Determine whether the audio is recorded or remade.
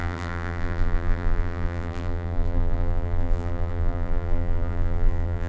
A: remade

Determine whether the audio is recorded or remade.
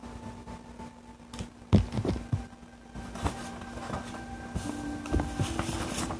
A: recorded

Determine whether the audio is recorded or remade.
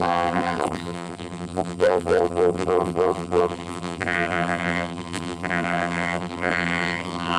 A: remade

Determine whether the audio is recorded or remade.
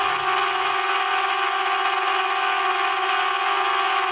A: recorded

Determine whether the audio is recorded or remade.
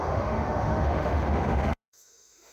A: remade